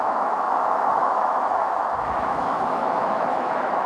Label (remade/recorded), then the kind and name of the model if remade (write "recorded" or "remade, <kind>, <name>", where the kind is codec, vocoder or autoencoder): remade, autoencoder, DAC-VAE